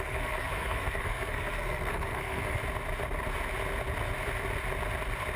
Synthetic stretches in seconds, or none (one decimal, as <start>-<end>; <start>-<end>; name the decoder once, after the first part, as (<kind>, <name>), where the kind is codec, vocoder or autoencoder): 0.0-2.6 (codec, SNAC)